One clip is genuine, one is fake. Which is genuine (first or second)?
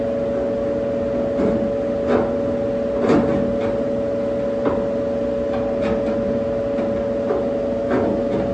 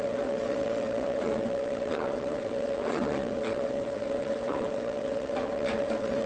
first